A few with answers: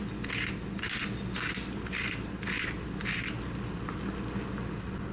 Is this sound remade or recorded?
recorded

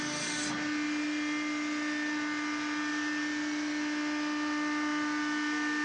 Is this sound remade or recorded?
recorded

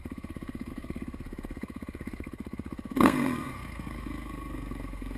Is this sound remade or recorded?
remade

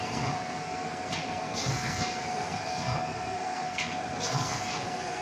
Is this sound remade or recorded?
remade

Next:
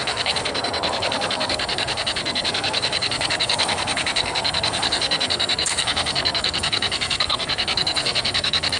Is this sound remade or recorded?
remade